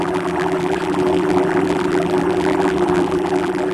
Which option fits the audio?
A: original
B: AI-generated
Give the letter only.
B